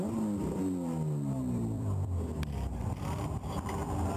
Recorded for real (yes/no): no